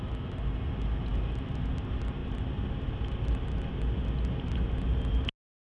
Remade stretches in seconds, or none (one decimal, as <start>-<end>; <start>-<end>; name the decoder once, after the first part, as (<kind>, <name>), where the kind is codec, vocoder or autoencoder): none